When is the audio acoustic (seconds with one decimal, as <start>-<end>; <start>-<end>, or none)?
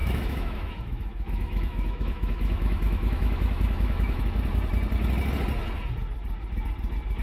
4.2-7.2